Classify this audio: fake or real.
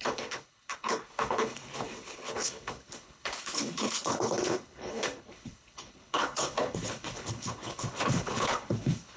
fake